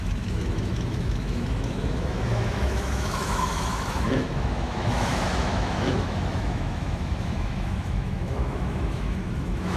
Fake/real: fake